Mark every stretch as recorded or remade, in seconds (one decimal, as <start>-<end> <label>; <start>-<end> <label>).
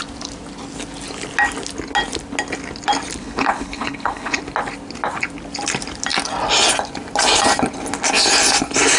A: 0.0-3.2 recorded; 3.2-4.4 remade; 4.4-9.0 recorded